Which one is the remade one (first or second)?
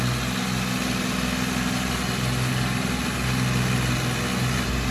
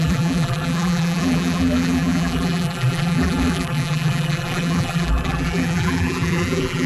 second